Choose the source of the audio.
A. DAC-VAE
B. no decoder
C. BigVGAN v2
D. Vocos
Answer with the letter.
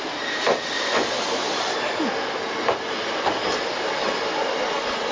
B